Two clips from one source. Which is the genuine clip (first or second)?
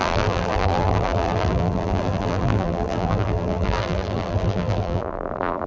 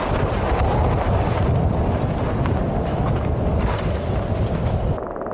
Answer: second